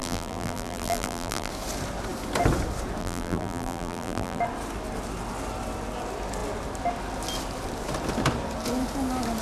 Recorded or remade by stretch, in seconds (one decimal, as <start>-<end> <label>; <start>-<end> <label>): 0.0-1.5 remade; 1.5-3.0 recorded; 3.0-4.4 remade; 4.4-9.4 recorded